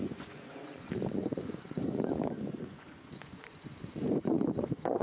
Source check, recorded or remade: remade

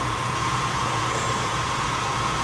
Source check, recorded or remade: remade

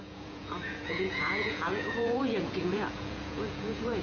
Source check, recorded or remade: remade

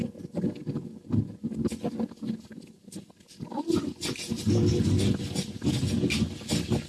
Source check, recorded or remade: recorded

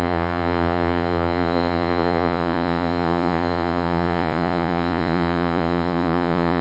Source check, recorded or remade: remade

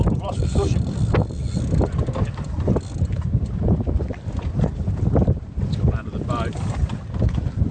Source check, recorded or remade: recorded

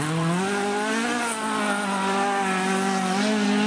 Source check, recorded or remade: recorded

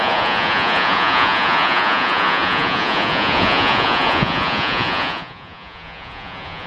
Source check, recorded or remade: remade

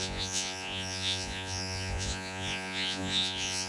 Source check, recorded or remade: remade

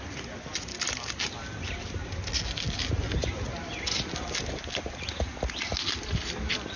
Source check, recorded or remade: recorded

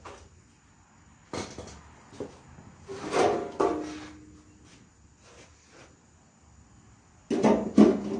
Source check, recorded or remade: recorded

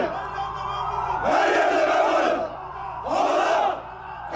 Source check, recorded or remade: remade